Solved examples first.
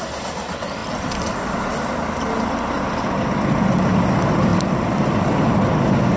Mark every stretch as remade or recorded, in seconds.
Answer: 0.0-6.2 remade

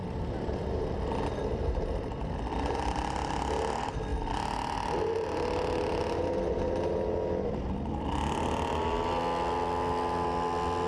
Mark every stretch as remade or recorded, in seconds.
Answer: 0.0-0.7 remade; 0.7-10.9 recorded

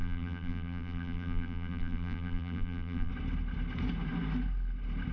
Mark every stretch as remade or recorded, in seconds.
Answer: 0.0-3.1 remade; 3.1-5.1 recorded

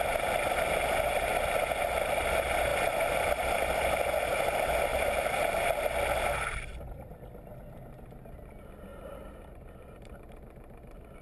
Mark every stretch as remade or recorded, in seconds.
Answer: 0.0-4.9 recorded; 4.9-6.9 remade; 6.9-8.9 recorded; 8.9-11.2 remade

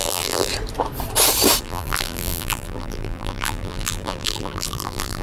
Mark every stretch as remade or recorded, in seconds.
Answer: 0.0-0.5 remade; 0.5-1.6 recorded; 1.6-5.2 remade

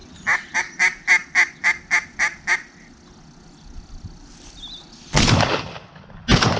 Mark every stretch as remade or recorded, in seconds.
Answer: 0.0-6.6 recorded